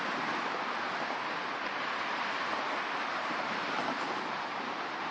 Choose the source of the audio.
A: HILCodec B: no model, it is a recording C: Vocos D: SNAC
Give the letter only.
B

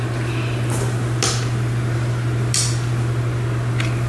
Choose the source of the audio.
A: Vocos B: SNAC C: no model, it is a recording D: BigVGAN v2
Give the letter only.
C